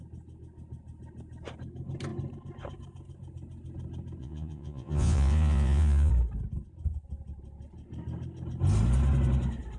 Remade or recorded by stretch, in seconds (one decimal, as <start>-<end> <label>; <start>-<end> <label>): 0.0-4.2 recorded; 4.2-6.1 remade; 6.1-9.8 recorded